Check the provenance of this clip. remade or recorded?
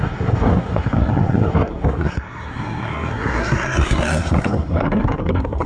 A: remade